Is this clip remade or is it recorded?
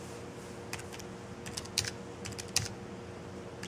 recorded